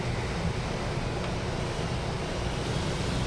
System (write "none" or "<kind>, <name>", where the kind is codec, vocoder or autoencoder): none